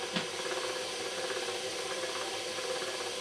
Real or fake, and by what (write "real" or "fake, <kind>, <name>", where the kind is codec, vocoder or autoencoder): real